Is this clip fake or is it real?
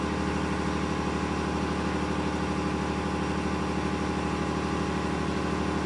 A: real